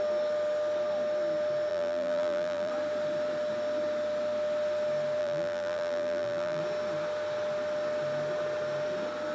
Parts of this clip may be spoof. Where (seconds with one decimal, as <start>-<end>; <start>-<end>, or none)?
1.7-2.7; 5.2-6.6